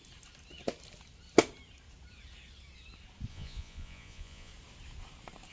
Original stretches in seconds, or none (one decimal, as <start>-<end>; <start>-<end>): 0.0-3.3; 4.5-5.5